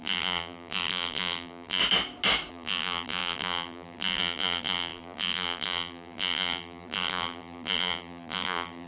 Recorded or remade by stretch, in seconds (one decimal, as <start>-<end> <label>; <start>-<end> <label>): 0.0-1.8 remade; 1.8-2.5 recorded; 2.5-8.9 remade